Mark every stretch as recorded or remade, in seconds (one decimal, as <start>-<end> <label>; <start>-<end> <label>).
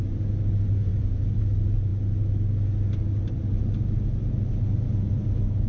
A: 0.0-5.7 recorded